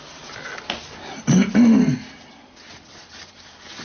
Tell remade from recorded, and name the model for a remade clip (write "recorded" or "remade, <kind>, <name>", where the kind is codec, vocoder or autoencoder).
recorded